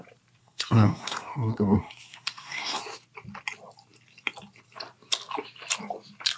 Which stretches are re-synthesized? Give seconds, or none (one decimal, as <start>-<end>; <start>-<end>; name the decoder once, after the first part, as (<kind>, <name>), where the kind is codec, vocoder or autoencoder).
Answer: 0.4-2.8 (codec, SNAC)